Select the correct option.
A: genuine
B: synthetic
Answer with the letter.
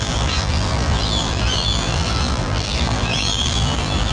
B